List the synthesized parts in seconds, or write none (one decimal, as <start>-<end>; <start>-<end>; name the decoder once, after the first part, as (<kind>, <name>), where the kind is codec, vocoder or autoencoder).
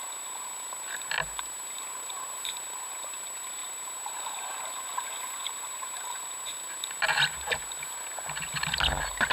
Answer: none